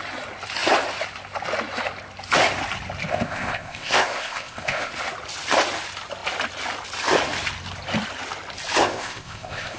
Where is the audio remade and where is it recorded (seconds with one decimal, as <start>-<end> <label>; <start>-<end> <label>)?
0.0-3.1 recorded; 3.1-4.9 remade; 4.9-8.8 recorded; 8.8-9.8 remade